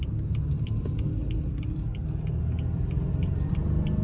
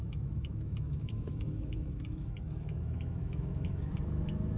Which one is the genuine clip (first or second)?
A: first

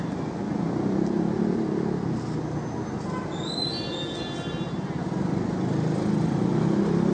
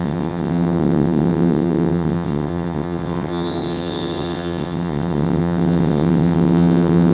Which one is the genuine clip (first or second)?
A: first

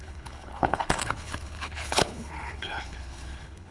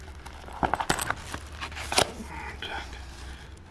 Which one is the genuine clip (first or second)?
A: second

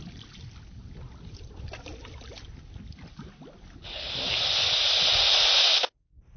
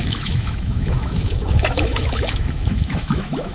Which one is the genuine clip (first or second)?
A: first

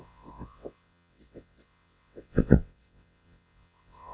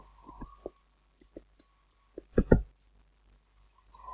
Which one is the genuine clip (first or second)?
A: second